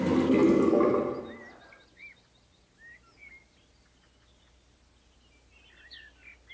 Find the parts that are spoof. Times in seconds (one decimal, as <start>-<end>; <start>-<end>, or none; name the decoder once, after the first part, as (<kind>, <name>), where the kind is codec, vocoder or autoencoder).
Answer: none